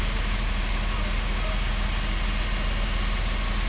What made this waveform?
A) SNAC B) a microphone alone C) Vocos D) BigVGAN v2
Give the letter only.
B